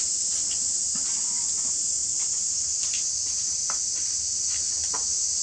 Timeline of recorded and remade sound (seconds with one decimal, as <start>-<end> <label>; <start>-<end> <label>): 0.0-5.4 recorded